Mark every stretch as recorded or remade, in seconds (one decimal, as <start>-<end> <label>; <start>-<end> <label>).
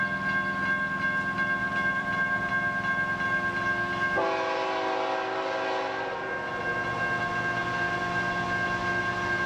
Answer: 0.0-1.6 recorded; 1.6-2.5 remade; 2.5-9.5 recorded